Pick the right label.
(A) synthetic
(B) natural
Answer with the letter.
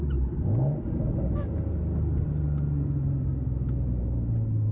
B